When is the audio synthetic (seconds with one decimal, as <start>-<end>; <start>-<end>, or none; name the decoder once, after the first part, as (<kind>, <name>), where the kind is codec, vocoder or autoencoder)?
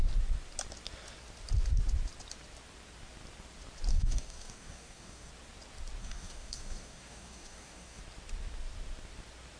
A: 3.9-5.3 (codec, DAC); 6.0-8.0